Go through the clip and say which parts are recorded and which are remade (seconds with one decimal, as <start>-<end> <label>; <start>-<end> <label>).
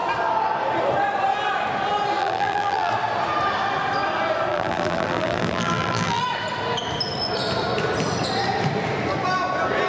0.0-2.2 recorded; 2.2-2.9 remade; 2.9-4.5 recorded; 4.5-6.2 remade; 6.2-9.9 recorded